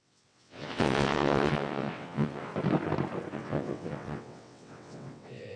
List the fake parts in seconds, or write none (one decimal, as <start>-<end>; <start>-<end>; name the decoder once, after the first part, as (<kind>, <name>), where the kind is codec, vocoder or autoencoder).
0.0-2.5 (vocoder, WaveNeXt); 3.3-5.6